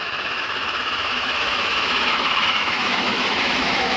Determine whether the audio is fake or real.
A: fake